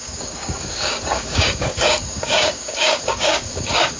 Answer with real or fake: fake